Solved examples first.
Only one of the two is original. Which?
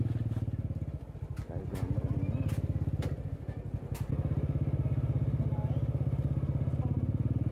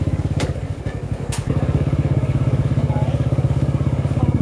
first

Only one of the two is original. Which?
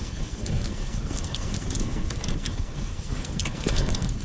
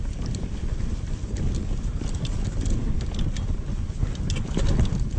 second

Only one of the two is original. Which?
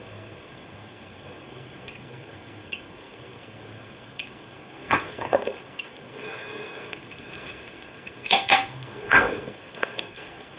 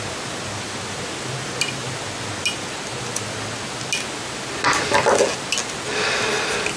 second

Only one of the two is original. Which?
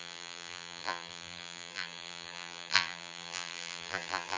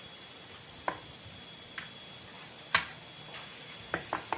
second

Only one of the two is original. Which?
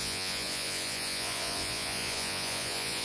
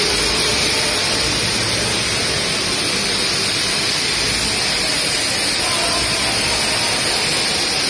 second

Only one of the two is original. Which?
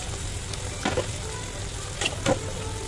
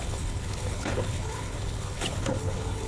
first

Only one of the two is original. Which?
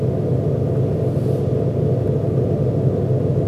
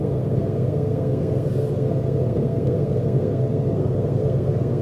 first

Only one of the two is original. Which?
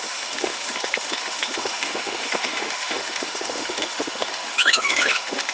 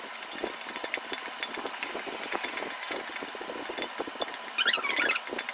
second